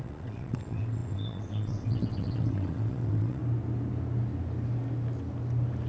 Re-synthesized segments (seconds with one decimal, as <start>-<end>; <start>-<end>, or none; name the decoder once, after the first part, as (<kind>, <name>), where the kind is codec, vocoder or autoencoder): 0.0-3.4 (vocoder, WaveNeXt)